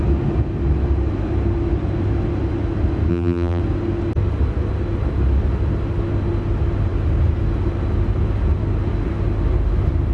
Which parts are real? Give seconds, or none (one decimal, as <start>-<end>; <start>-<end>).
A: 0.0-3.1; 3.6-10.1